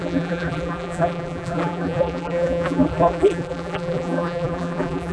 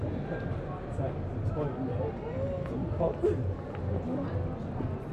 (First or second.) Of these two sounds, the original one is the second